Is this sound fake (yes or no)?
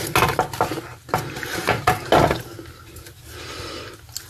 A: no